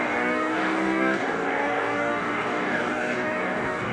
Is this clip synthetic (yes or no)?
yes